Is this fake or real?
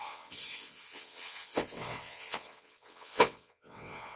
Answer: fake